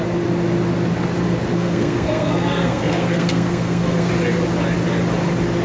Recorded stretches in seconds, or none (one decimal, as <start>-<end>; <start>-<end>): 0.0-1.5; 4.1-5.6